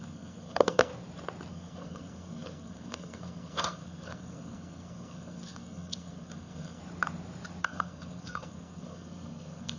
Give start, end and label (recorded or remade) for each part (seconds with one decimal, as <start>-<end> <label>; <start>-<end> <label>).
0.0-0.9 remade; 0.9-1.5 recorded; 1.5-6.8 remade; 6.8-7.6 recorded; 7.6-9.8 remade